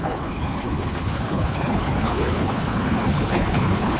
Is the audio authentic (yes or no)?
no